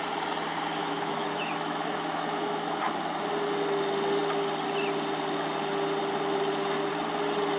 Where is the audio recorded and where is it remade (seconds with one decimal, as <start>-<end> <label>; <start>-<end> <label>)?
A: 0.0-0.8 recorded; 0.8-2.8 remade; 2.8-7.6 recorded